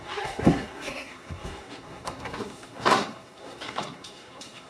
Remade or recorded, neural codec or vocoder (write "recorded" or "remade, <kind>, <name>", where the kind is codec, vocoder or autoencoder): remade, codec, SNAC